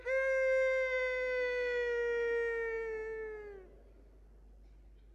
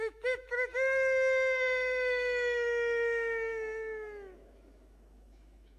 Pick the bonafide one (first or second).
first